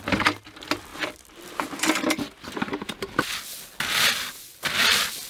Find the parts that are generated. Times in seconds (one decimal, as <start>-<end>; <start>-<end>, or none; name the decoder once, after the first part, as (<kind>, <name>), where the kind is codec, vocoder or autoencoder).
none